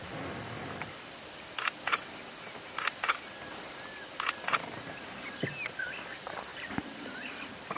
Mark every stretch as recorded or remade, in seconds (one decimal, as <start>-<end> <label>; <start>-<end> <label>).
0.0-7.8 recorded

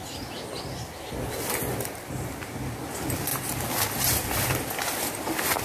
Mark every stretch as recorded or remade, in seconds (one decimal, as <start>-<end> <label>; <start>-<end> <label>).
0.0-5.6 recorded

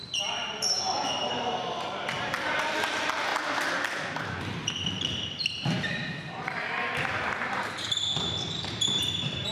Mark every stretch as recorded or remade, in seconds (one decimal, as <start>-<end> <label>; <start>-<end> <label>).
0.0-0.8 remade; 0.8-1.3 recorded; 1.3-3.3 remade; 3.3-4.4 recorded; 4.4-9.5 remade

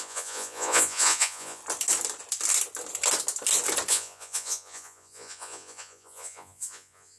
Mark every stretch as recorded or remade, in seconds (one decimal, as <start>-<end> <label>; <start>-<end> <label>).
0.0-1.6 remade; 1.6-3.9 recorded; 3.9-7.2 remade